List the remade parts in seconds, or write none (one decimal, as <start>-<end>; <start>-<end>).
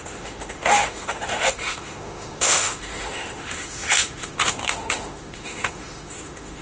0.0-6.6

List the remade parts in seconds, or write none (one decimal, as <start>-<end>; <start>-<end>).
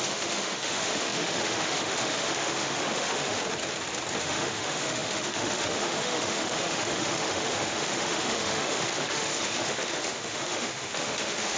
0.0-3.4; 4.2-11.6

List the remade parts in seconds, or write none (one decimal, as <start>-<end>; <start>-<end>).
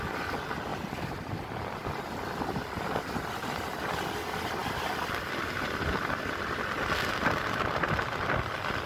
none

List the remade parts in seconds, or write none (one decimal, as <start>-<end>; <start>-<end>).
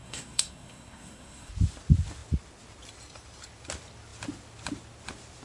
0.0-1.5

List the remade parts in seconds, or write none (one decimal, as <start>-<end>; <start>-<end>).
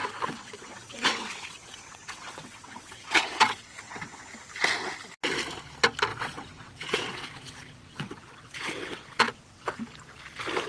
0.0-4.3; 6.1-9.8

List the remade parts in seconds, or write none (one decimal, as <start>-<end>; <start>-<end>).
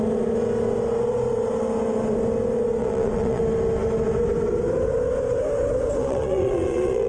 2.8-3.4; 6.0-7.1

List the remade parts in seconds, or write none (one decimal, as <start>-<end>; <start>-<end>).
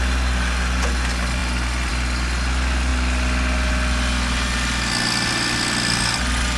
none